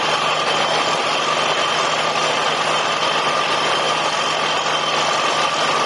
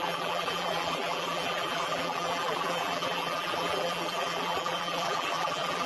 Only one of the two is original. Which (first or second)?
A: first